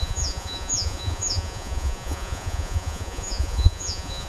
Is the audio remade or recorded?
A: remade